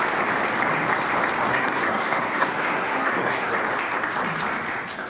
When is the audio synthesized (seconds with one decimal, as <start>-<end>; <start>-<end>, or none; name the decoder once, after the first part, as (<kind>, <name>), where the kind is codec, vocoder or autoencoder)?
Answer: 1.5-3.5 (codec, SNAC)

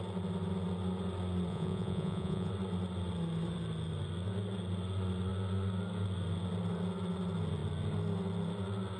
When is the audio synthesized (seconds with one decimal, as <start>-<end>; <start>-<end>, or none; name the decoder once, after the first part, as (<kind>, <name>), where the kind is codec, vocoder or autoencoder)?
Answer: 1.5-2.5 (vocoder, Vocos)

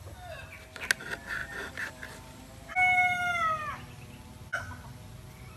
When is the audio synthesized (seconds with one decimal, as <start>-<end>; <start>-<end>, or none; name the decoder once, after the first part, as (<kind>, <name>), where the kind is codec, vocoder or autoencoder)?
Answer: none